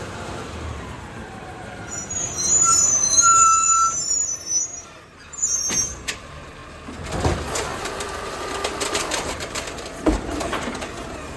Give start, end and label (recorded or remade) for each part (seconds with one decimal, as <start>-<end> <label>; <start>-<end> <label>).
0.0-6.6 remade; 6.6-7.2 recorded; 7.2-11.4 remade